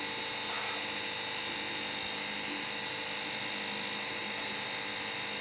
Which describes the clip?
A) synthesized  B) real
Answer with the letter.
B